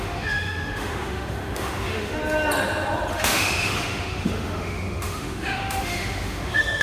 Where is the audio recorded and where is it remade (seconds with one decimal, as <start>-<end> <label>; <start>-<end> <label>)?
0.0-2.2 remade; 2.2-3.1 recorded; 3.1-6.8 remade